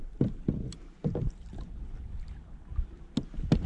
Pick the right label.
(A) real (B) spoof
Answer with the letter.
A